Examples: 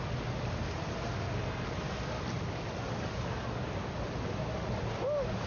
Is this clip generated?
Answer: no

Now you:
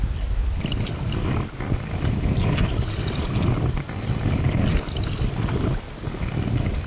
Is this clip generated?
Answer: no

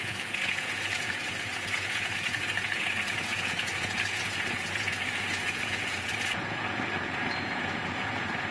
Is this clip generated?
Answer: yes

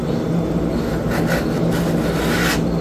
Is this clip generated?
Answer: no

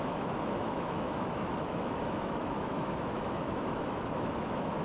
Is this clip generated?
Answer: yes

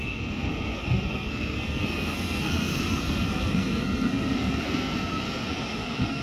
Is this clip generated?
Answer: yes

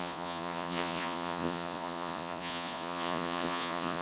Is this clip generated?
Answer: yes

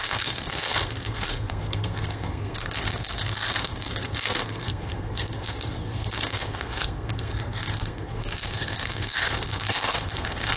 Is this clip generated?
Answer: yes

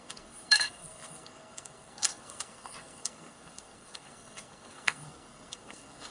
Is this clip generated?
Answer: yes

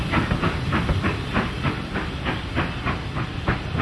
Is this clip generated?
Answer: no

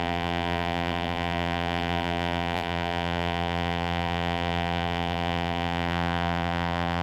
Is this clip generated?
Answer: yes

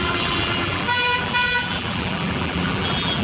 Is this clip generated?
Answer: yes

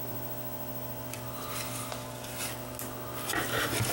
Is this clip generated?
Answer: no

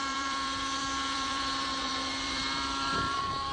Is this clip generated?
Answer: yes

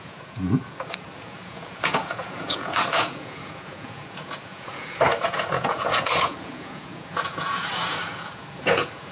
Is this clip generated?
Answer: yes